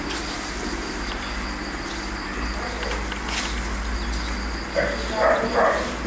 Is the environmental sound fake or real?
real